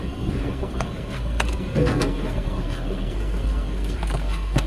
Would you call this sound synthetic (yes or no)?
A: yes